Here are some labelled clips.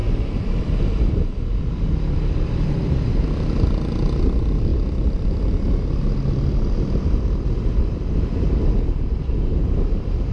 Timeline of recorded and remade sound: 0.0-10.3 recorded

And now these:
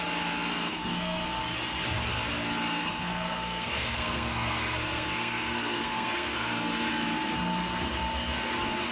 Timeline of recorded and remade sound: 0.0-0.7 recorded; 0.7-1.4 remade; 1.4-2.8 recorded; 2.8-6.9 remade; 6.9-8.9 recorded